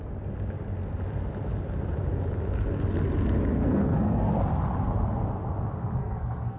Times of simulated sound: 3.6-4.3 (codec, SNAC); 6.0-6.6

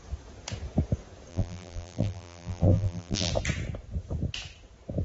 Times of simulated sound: 1.3-3.3 (vocoder, BigVGAN v2)